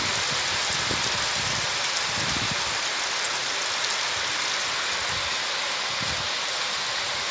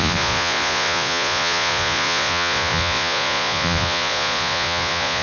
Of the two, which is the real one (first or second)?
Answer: first